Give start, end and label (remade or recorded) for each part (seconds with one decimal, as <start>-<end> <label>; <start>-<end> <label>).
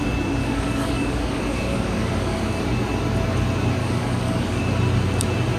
0.0-0.4 recorded; 0.4-2.6 remade; 2.6-3.8 recorded; 3.8-4.6 remade; 4.6-5.6 recorded